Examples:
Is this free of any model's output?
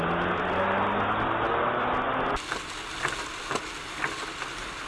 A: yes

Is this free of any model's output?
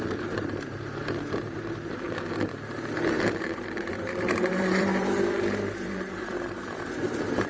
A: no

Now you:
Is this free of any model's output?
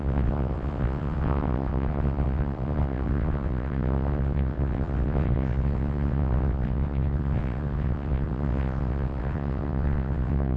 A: no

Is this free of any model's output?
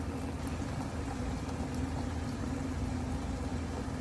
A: yes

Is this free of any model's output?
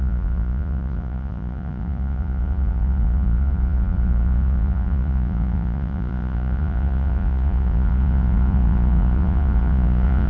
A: no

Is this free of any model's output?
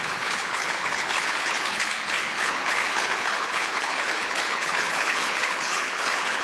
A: no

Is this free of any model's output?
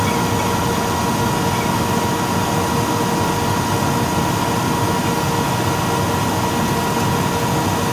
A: yes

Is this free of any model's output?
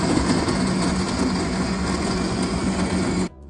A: no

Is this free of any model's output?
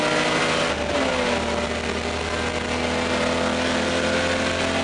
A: yes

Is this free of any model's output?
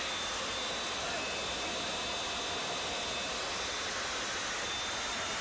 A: yes